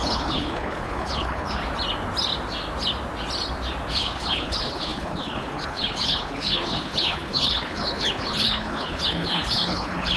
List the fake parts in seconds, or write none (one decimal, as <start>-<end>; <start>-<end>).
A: 0.0-1.6; 3.9-10.2